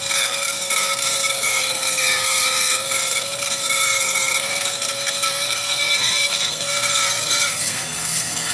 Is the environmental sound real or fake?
fake